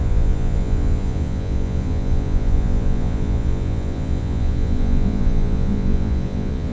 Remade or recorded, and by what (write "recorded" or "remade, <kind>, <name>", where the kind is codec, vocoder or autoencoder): remade, vocoder, Vocos